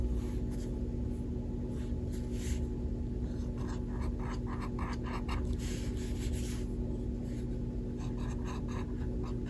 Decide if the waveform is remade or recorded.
recorded